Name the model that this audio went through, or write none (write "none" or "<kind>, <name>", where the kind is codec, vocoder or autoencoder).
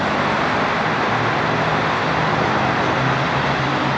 none